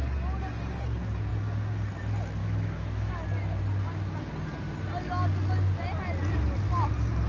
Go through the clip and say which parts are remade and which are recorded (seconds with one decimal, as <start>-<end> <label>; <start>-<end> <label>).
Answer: 0.0-2.4 recorded; 2.4-3.1 remade; 3.1-7.3 recorded